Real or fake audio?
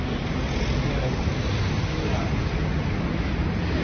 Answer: real